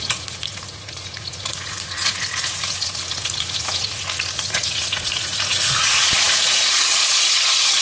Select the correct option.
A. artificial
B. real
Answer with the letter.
A